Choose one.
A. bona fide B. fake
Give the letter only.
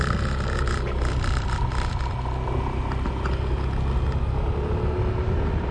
A